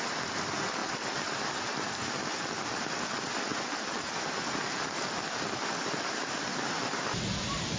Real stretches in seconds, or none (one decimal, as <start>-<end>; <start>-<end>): 0.0-7.8